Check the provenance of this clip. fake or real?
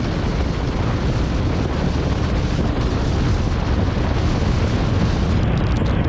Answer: real